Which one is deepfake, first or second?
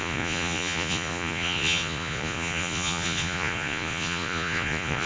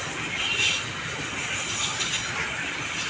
first